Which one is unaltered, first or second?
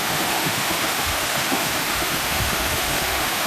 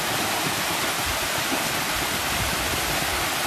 second